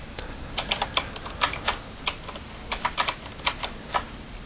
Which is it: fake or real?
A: real